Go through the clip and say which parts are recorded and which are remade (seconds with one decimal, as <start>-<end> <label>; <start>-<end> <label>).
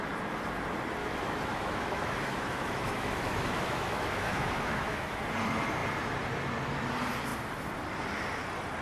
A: 0.0-1.0 recorded; 1.0-5.2 remade; 5.2-8.8 recorded